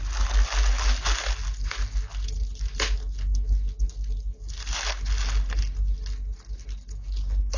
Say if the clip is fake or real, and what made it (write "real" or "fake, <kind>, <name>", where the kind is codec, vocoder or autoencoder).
real